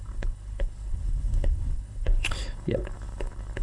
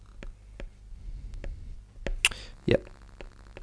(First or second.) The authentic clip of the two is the second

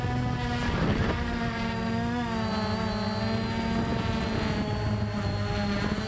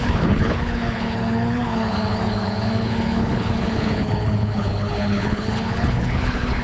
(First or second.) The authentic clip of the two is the first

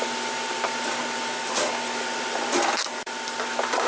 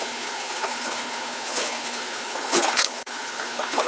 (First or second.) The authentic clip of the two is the first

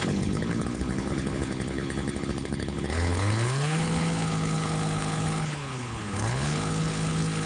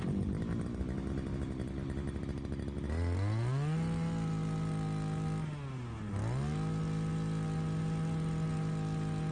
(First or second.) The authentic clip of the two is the second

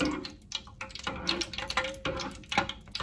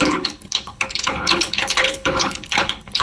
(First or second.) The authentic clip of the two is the first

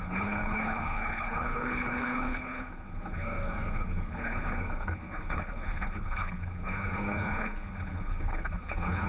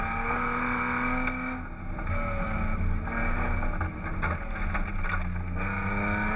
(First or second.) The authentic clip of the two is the second